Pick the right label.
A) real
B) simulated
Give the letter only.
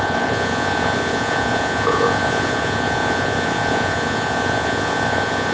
B